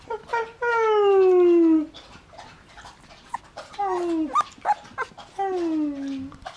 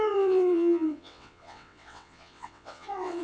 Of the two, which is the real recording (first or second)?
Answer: first